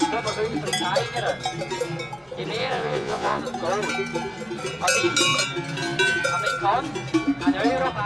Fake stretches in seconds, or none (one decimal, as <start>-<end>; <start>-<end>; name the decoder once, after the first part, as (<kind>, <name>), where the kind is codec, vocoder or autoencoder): 2.6-3.4 (vocoder, Vocos)